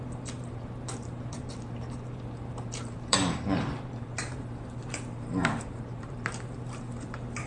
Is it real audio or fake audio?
fake